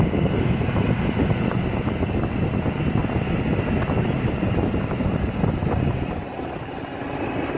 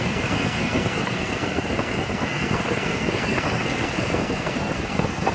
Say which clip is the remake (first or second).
second